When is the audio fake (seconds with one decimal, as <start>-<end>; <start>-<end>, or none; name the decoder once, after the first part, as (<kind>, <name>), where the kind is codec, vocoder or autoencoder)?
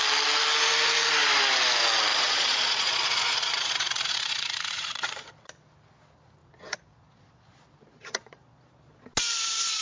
2.1-5.3 (vocoder, Vocos); 6.4-9.1